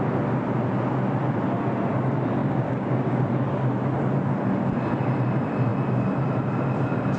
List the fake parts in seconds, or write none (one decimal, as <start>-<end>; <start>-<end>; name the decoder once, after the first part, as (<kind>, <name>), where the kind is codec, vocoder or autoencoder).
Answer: 2.4-3.2 (codec, DAC)